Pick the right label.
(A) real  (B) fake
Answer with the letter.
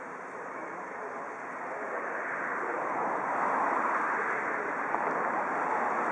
A